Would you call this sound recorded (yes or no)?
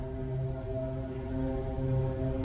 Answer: yes